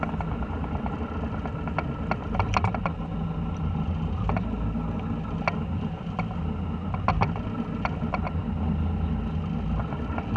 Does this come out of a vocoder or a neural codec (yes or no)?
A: no